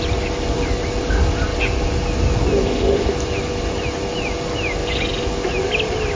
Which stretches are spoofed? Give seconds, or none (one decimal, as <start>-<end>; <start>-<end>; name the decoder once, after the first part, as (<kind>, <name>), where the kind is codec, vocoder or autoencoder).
none